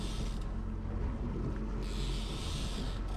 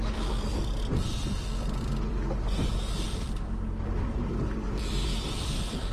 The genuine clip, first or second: first